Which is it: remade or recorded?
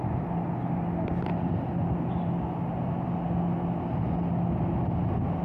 recorded